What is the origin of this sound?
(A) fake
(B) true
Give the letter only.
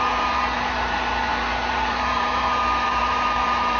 A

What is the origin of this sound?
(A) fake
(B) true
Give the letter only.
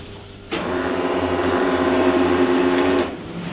A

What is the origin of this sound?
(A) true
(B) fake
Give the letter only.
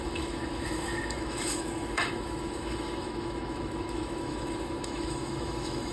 B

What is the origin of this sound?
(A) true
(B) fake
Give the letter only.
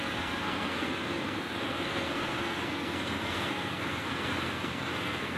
B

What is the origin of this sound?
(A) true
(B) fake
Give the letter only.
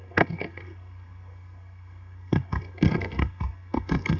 B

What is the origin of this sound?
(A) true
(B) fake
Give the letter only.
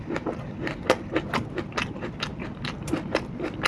A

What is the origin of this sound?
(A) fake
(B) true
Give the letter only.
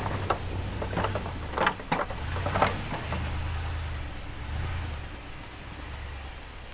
B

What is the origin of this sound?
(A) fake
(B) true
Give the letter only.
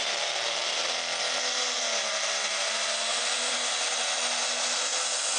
B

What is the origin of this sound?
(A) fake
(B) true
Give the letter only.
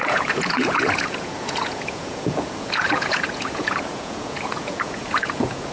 A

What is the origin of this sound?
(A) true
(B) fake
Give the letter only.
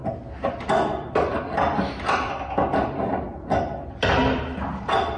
A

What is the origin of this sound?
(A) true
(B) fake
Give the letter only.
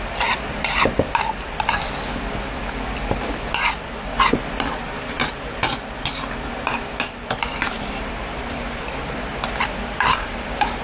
B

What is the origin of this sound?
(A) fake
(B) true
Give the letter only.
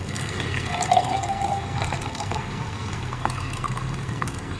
A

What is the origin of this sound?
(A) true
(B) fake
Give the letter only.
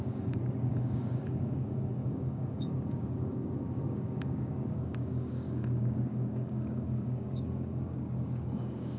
B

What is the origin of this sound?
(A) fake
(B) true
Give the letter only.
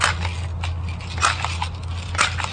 B